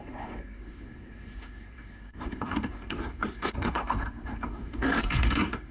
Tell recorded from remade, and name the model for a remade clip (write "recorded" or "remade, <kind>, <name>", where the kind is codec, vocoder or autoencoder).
remade, codec, SNAC